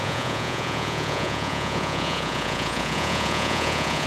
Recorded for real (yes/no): no